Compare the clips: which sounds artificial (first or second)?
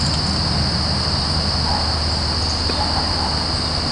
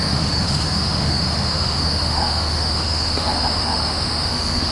second